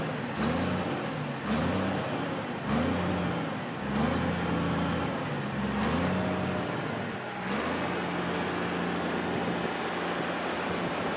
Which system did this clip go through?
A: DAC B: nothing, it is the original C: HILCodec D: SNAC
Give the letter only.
B